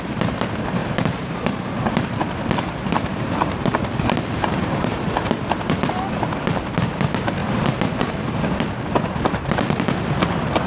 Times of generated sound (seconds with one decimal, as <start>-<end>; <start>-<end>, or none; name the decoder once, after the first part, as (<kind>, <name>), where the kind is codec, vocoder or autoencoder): 0.8-2.2 (vocoder, BigVGAN v2); 3.1-5.1